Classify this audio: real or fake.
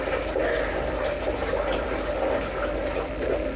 real